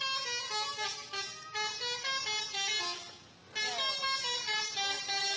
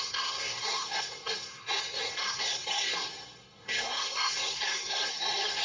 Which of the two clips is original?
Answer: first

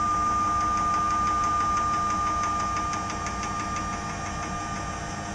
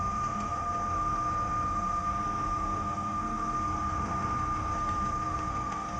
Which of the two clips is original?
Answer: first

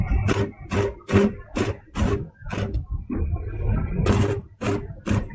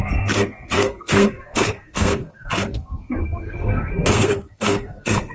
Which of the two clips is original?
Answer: first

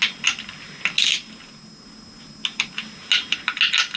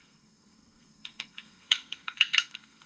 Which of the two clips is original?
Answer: first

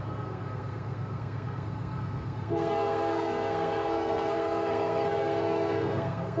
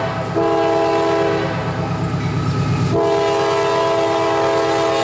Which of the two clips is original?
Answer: second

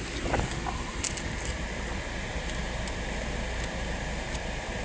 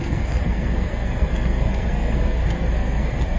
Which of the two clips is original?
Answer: first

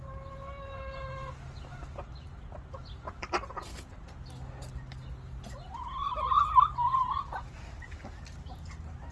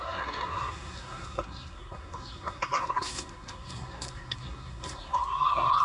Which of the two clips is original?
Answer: first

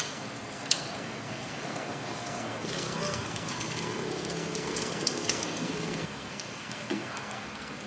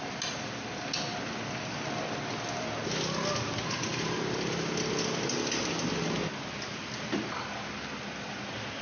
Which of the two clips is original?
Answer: second